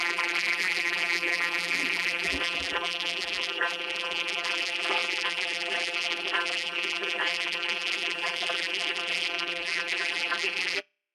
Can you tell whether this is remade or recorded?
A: remade